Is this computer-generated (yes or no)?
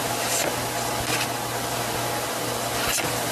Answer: no